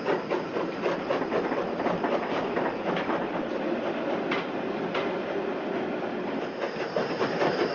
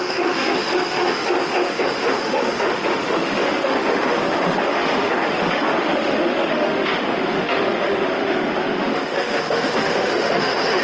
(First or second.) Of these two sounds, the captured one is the first